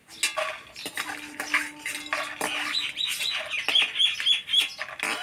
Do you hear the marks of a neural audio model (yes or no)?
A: no